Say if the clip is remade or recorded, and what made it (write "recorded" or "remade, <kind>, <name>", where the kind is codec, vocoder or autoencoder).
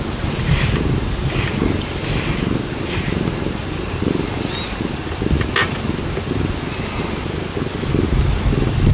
recorded